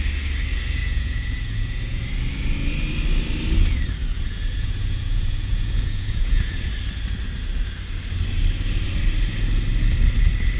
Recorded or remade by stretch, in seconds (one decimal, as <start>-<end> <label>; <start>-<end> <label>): 0.0-0.8 recorded; 0.8-2.0 remade; 2.0-4.0 recorded; 4.0-6.7 remade; 6.7-10.6 recorded